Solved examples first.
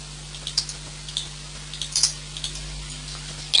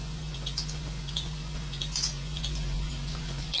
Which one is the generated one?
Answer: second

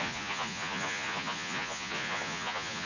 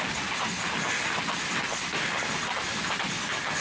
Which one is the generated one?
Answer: first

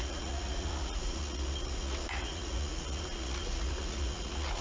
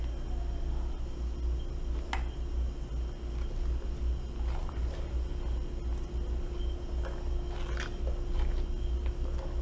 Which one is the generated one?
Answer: first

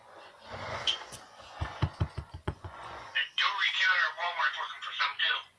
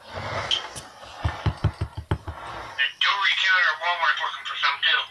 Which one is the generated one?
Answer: first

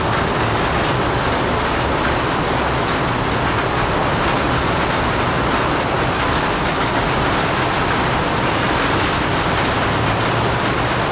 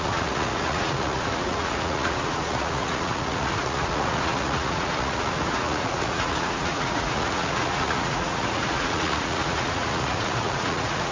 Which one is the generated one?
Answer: second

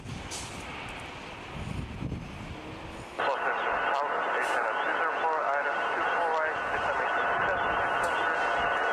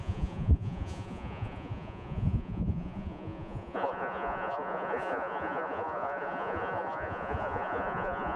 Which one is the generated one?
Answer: second